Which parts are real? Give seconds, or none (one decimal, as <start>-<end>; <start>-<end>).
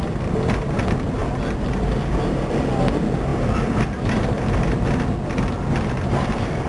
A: 0.0-6.7